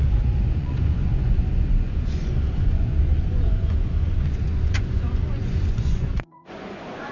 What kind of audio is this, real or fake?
fake